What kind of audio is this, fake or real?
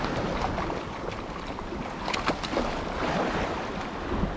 real